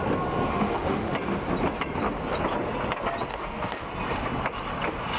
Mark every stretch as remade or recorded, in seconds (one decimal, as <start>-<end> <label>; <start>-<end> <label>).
0.0-0.5 recorded; 0.5-1.1 remade; 1.1-3.3 recorded; 3.3-3.9 remade; 3.9-5.2 recorded